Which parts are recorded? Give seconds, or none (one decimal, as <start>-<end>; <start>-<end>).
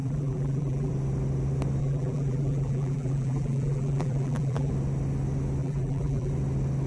0.9-1.8; 4.7-5.6; 6.3-6.9